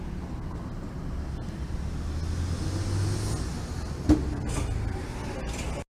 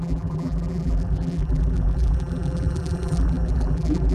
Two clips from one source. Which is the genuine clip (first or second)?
first